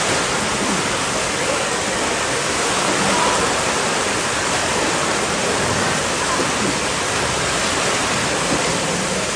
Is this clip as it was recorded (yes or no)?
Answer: yes